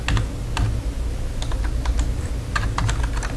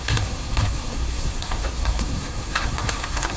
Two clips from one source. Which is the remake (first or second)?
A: second